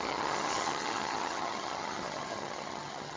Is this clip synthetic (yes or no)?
yes